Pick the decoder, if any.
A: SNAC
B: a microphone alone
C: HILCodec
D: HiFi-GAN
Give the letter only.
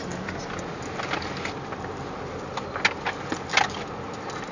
B